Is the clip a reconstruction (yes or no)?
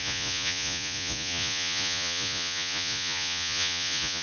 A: yes